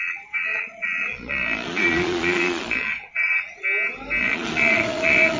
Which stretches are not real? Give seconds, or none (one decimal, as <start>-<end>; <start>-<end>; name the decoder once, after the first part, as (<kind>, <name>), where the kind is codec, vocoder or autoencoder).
0.0-3.6 (vocoder, Vocos); 4.2-5.4